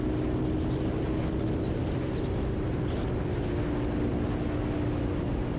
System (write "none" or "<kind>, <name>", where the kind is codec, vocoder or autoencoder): none